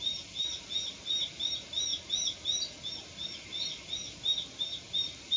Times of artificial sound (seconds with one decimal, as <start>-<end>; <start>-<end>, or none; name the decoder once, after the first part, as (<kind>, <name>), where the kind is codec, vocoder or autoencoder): none